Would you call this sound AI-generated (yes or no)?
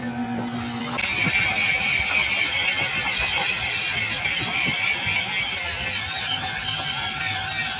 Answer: no